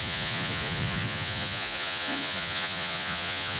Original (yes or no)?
no